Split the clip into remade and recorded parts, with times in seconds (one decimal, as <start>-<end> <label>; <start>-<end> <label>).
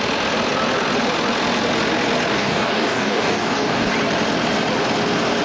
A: 0.0-2.3 recorded; 2.3-3.9 remade; 3.9-5.4 recorded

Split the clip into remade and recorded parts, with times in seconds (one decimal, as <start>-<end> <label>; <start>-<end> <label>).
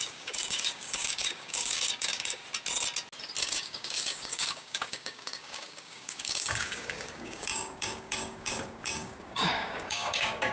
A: 0.0-2.4 remade; 2.4-3.4 recorded; 3.4-10.5 remade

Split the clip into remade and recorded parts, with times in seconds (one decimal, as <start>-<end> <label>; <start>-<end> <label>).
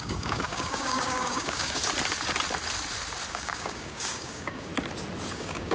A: 0.0-1.8 remade; 1.8-3.3 recorded; 3.3-4.7 remade; 4.7-5.3 recorded; 5.3-5.7 remade